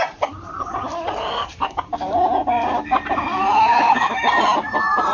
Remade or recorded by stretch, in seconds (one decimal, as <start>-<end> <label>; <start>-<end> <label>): 0.0-3.7 recorded; 3.7-4.3 remade; 4.3-5.1 recorded